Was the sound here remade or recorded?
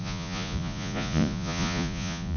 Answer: remade